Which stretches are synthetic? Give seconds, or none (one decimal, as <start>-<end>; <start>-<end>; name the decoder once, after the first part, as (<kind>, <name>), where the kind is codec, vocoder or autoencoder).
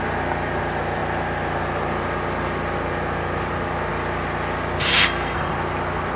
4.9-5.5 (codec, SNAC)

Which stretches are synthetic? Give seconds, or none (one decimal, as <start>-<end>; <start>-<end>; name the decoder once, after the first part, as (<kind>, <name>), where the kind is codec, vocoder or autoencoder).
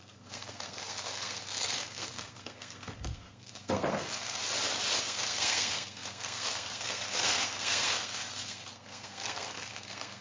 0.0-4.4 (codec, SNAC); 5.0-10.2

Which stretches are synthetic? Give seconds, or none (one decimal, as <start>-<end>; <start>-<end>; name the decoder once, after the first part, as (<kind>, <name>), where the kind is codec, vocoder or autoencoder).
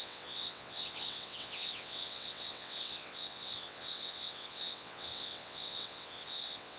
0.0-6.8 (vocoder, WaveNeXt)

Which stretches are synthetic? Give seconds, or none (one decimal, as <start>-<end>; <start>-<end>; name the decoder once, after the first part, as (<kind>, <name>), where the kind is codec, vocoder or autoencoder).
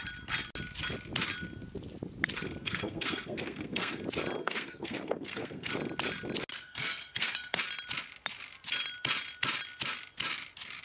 2.6-4.0 (codec, SNAC); 4.4-5.7; 6.5-7.6